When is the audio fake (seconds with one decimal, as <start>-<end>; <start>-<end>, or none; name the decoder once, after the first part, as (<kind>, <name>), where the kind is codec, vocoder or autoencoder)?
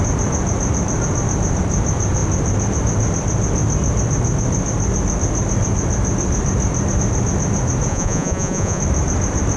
7.9-8.8 (vocoder, Vocos)